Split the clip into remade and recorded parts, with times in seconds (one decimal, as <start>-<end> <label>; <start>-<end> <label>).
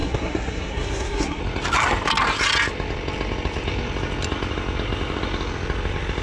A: 0.0-1.4 remade; 1.4-6.2 recorded